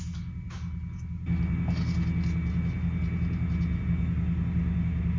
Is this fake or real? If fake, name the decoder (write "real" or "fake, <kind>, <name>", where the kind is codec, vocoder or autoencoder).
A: real